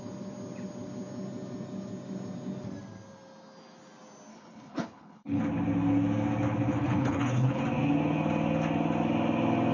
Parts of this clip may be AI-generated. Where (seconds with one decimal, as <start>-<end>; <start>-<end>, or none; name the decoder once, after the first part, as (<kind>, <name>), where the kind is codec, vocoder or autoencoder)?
4.3-5.4 (codec, HILCodec); 6.7-7.6